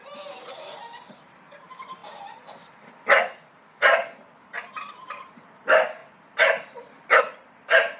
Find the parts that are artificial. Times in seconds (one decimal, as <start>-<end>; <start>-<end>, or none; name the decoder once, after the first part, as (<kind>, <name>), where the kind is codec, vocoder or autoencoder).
none